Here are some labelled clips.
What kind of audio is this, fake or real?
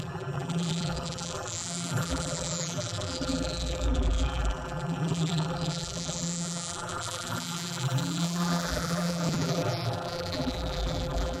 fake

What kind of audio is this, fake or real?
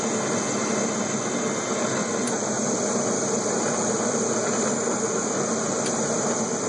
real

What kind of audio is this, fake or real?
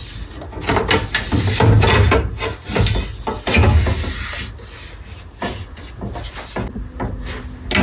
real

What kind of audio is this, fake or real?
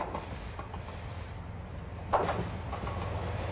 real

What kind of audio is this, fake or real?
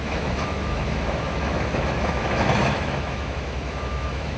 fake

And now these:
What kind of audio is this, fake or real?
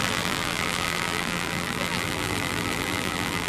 fake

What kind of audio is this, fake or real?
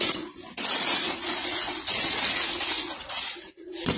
fake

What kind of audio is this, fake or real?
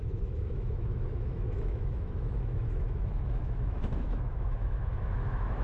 fake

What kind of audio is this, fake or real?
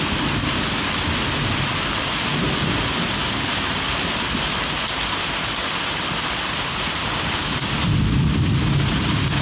real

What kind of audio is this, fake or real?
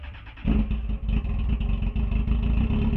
real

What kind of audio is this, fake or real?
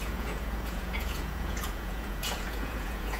fake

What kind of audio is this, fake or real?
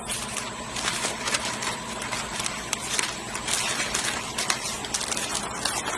real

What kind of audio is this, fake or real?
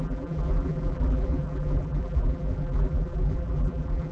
fake